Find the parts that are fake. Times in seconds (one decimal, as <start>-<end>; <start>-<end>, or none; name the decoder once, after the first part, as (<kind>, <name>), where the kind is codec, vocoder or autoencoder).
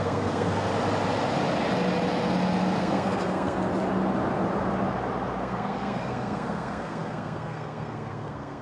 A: 0.0-0.7 (codec, SNAC); 2.8-3.7; 5.4-8.6